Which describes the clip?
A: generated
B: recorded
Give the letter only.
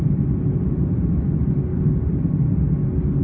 B